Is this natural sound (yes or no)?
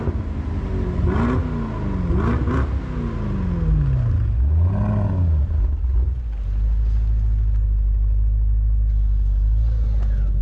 yes